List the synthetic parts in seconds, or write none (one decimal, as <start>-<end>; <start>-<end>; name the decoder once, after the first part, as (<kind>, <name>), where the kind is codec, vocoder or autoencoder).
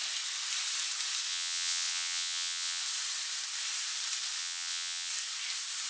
1.3-2.8 (vocoder, WaveNeXt); 4.4-5.1